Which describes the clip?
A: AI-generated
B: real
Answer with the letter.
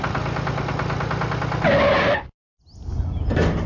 B